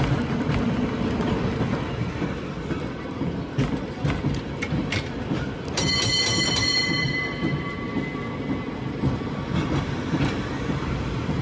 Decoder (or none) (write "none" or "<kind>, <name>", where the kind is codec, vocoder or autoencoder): none